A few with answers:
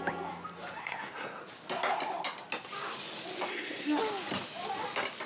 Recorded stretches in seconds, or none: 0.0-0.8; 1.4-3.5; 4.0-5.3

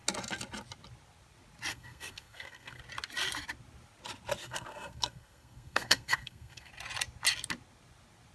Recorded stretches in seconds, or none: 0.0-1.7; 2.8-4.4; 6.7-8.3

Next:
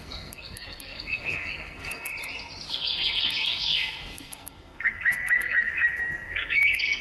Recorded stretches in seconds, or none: 2.1-2.7

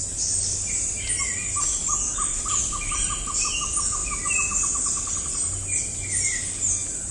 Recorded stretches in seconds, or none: 0.0-7.1